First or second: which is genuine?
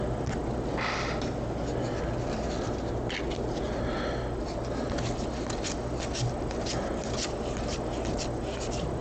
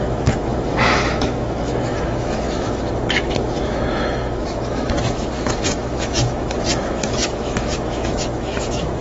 first